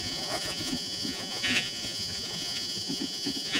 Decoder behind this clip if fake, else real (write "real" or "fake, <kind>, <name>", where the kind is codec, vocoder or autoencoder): fake, vocoder, Vocos